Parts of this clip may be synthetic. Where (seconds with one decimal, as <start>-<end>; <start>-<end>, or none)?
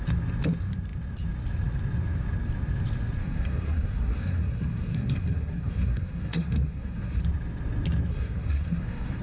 3.2-7.2; 8.1-9.2